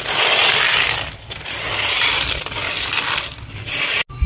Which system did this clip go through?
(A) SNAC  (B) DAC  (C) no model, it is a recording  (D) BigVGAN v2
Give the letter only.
C